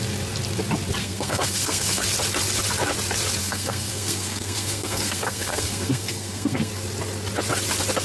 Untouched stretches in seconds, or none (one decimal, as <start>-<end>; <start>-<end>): 0.0-1.0; 2.0-3.4; 6.7-8.0